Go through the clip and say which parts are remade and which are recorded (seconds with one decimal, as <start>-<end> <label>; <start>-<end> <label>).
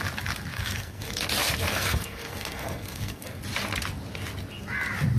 0.0-0.5 recorded; 0.5-1.1 remade; 1.1-1.7 recorded; 1.7-3.4 remade; 3.4-5.2 recorded